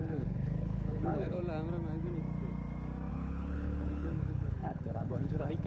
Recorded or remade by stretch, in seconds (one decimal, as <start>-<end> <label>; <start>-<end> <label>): 0.0-1.4 remade; 1.4-3.1 recorded; 3.1-5.7 remade